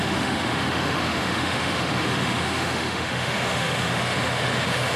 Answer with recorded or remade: remade